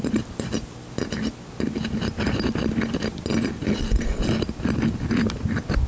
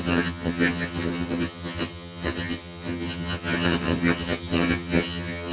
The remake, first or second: second